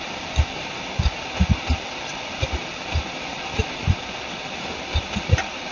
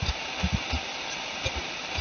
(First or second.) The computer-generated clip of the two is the first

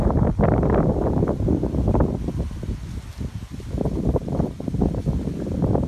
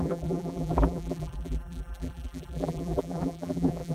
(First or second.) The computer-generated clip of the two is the second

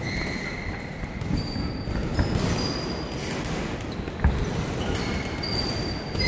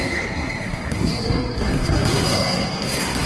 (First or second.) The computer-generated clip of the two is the second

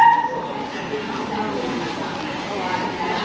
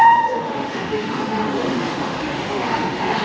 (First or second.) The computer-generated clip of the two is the second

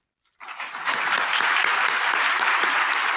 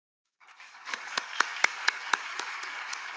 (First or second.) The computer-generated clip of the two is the second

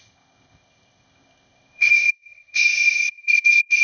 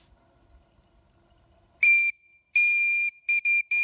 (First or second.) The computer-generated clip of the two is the first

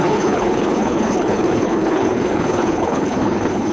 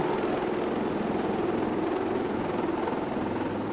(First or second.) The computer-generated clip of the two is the first